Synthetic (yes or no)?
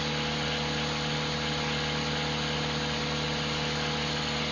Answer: no